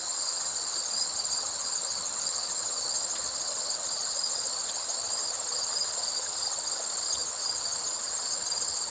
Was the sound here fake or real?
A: fake